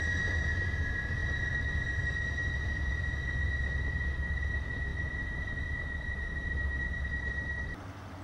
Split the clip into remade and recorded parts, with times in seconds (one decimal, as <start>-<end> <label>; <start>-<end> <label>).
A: 0.0-8.2 recorded